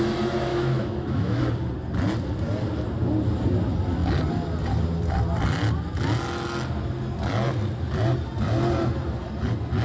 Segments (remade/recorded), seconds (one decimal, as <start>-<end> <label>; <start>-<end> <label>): 0.0-0.5 recorded; 0.5-1.4 remade; 1.4-9.8 recorded